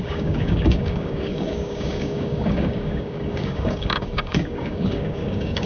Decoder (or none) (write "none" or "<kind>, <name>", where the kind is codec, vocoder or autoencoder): codec, DAC